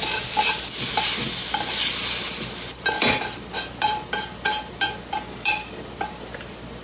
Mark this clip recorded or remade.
recorded